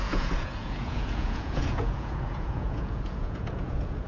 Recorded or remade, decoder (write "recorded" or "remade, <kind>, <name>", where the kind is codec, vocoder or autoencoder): remade, vocoder, Vocos